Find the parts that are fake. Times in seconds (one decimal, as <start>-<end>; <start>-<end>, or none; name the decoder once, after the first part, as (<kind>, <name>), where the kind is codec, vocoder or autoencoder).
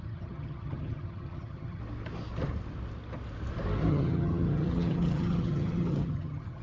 0.0-1.8 (vocoder, HiFi-GAN); 3.9-6.6